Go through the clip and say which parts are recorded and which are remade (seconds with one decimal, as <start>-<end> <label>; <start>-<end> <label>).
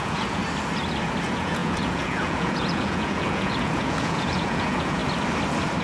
0.0-0.4 remade; 0.4-1.2 recorded; 1.2-5.0 remade; 5.0-5.8 recorded